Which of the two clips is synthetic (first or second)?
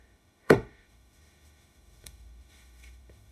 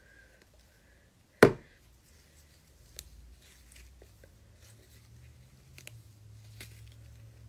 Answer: first